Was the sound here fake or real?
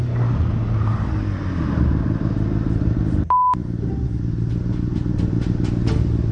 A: real